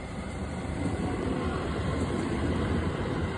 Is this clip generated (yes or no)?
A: yes